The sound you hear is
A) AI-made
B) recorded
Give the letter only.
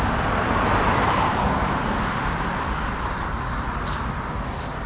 A